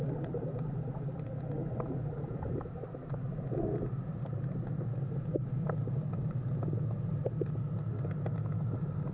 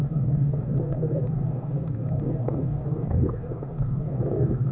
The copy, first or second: second